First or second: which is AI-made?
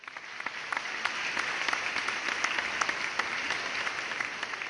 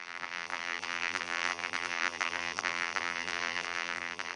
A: second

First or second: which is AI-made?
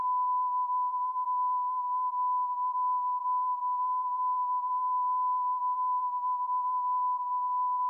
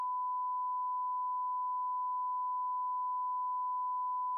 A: first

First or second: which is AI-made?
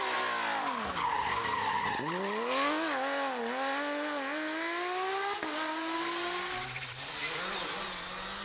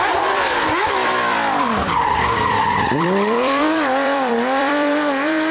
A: second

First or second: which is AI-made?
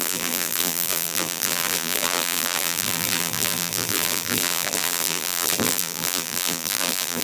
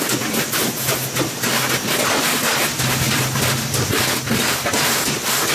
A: first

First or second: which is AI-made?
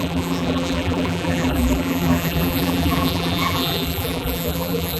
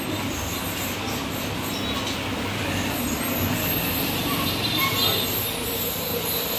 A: first